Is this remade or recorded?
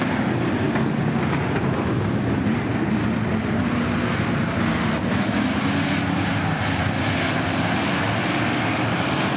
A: recorded